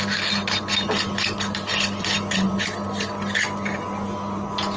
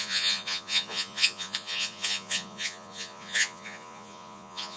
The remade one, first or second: second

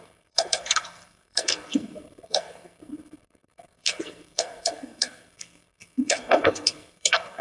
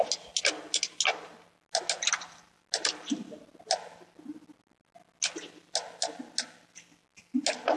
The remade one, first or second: first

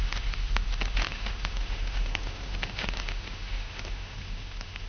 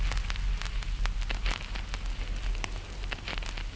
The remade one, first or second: first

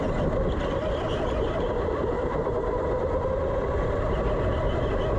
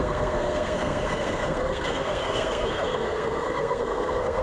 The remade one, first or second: second